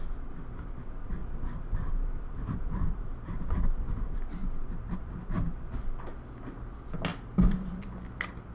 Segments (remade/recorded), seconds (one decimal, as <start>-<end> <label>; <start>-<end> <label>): 0.0-1.2 recorded; 1.2-4.0 remade; 4.0-4.4 recorded; 4.4-5.4 remade; 5.4-7.1 recorded; 7.1-7.7 remade; 7.7-8.5 recorded